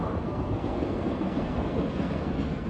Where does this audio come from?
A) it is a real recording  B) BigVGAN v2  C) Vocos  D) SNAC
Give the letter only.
D